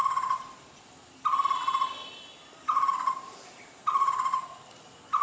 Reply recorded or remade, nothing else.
recorded